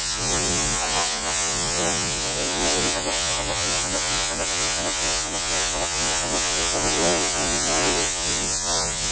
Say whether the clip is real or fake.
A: fake